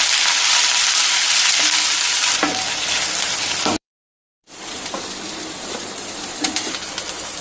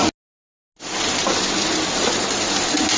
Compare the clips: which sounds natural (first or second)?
second